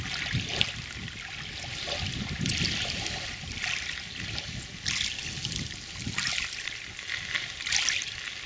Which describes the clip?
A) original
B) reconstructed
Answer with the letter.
A